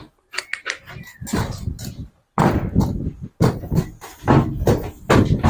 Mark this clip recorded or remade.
recorded